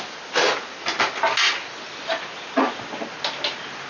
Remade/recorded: recorded